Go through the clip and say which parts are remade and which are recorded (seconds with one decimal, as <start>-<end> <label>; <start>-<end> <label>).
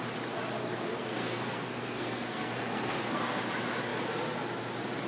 0.0-0.6 recorded; 0.6-3.4 remade; 3.4-5.1 recorded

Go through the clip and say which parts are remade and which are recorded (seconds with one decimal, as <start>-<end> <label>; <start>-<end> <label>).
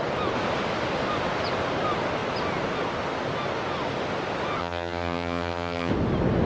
0.0-4.6 recorded; 4.6-5.9 remade; 5.9-6.5 recorded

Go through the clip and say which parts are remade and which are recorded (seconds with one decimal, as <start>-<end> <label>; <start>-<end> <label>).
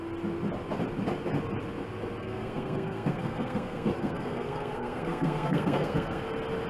0.0-2.2 recorded; 2.2-6.2 remade; 6.2-6.7 recorded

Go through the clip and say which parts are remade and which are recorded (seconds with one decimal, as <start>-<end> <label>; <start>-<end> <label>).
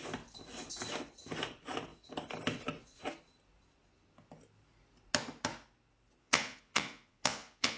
0.0-6.2 recorded; 6.2-7.8 remade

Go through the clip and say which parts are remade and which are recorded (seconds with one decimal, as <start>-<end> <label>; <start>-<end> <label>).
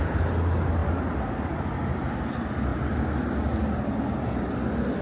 0.0-5.0 recorded